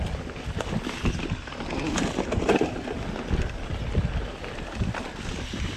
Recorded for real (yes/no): yes